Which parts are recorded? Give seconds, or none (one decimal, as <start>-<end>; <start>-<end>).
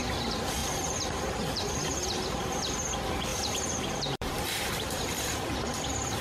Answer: 0.0-0.6; 2.4-3.3; 4.9-6.2